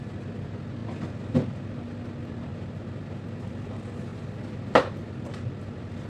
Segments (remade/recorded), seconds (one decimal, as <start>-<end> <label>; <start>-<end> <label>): 0.0-2.5 remade; 2.5-3.5 recorded; 3.5-4.1 remade; 4.1-4.8 recorded; 4.8-6.1 remade